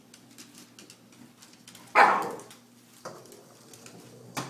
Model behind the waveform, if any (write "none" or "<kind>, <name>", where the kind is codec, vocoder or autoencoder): none